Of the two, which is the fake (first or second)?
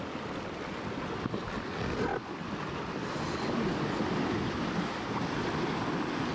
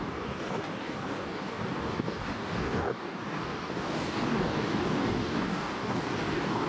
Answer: second